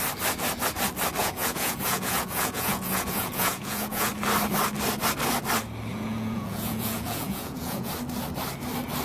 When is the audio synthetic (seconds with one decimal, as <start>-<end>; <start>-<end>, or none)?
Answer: 1.2-4.1; 5.9-7.9